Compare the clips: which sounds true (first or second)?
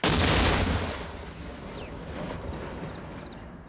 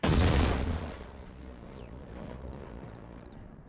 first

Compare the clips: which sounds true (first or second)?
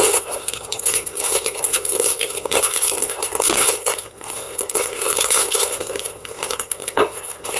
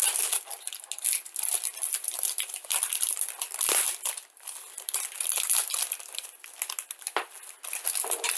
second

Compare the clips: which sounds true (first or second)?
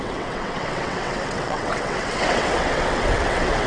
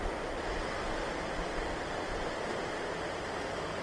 second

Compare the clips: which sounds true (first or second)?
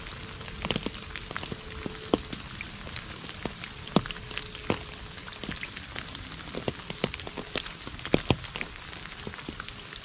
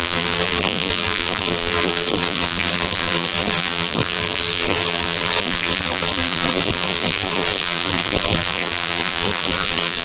first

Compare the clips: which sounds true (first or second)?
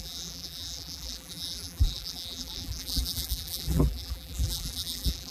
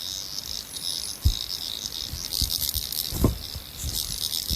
second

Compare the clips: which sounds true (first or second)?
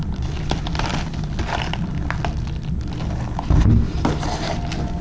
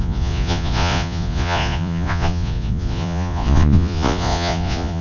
first